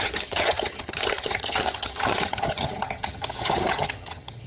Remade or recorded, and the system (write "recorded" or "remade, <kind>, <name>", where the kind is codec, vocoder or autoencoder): remade, vocoder, HiFi-GAN